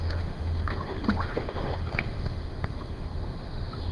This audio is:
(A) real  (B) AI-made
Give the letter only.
B